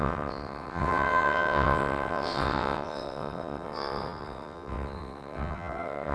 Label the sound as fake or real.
fake